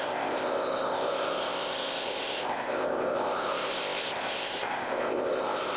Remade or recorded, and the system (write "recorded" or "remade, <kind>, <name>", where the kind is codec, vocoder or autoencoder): remade, codec, ZipCodec